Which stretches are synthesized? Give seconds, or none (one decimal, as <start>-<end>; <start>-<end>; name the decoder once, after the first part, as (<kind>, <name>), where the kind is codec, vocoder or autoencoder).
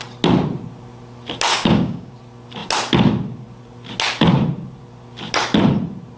1.5-2.1 (codec, DAC)